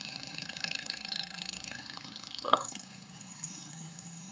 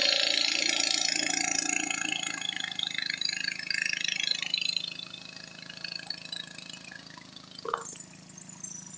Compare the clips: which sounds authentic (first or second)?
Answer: second